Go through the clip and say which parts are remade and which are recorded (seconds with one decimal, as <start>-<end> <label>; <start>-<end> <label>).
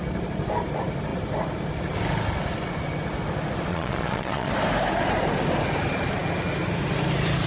0.0-3.7 recorded; 3.7-4.5 remade; 4.5-7.5 recorded